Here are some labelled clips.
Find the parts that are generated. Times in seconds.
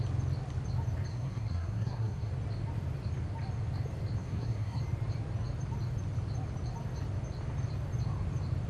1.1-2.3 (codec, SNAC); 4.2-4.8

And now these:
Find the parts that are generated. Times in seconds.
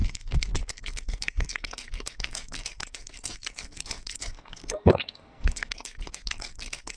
0.0-7.0 (codec, SNAC)